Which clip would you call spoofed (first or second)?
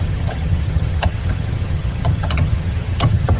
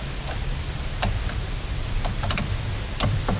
first